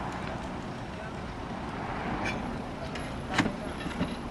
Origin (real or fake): real